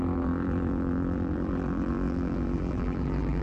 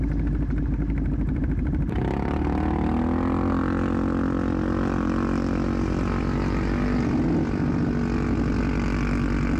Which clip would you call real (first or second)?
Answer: second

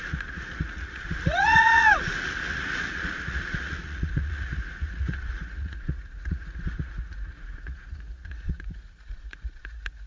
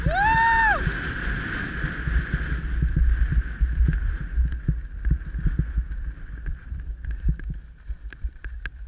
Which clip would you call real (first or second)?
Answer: second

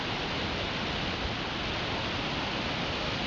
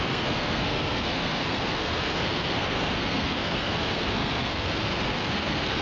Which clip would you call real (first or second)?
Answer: first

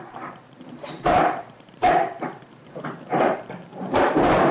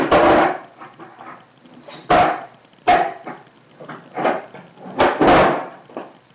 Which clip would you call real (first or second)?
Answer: second